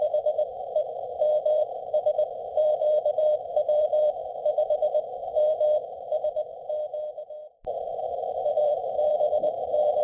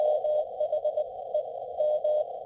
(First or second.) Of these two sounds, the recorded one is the second